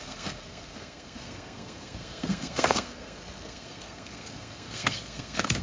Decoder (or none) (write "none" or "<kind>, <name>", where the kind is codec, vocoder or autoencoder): codec, SNAC